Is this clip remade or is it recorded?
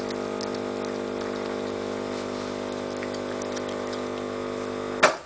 recorded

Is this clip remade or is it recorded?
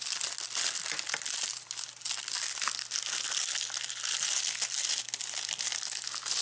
recorded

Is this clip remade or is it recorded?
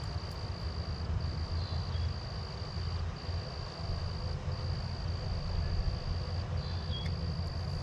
recorded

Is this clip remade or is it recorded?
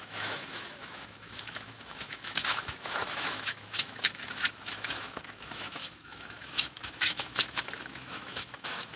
remade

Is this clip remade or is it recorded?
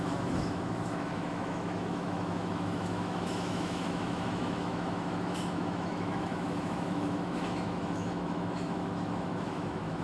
remade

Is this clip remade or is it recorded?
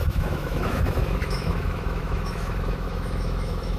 remade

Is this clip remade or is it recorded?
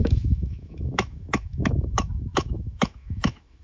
remade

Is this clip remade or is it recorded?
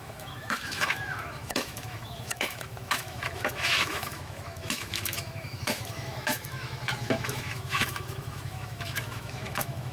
remade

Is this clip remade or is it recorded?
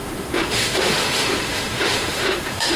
remade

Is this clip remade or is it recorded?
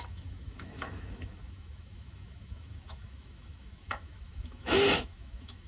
remade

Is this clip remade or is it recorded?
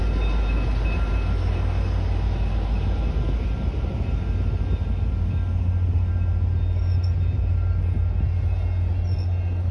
recorded